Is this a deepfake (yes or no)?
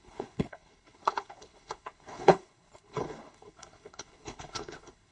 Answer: yes